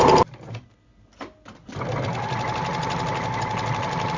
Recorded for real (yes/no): yes